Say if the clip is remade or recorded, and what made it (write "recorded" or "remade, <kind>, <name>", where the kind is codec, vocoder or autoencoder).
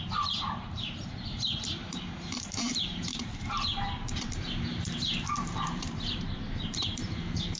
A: remade, vocoder, BigVGAN v2